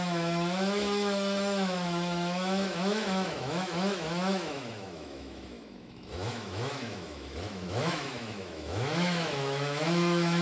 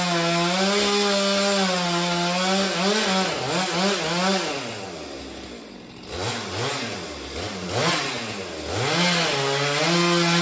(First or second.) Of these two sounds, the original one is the second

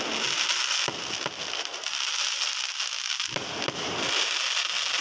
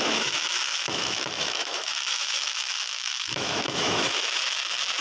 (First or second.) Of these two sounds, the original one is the first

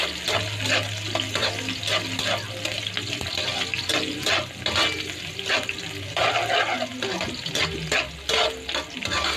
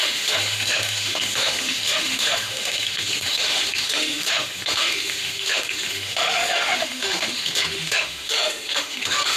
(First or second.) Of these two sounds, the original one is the first